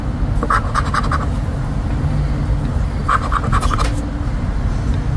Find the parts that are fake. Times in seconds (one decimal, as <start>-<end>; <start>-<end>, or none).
none